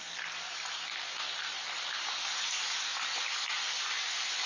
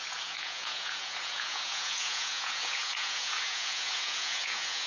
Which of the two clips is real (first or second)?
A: first